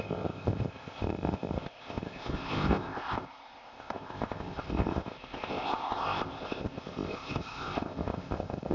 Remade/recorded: remade